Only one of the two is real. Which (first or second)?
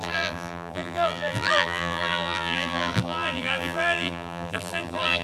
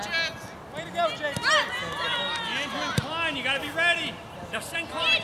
second